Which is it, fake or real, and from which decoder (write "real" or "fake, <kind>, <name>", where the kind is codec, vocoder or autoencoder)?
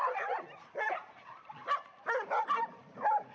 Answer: fake, vocoder, BigVGAN v2